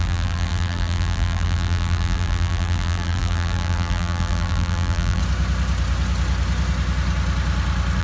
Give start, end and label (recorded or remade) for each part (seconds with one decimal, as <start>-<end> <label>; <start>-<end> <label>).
0.0-5.2 remade; 5.2-8.0 recorded